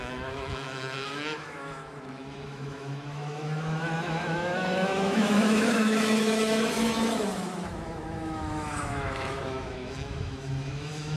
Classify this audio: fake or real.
fake